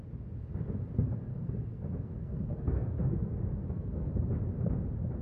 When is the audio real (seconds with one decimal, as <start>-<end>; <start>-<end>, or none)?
0.0-1.3; 4.1-5.2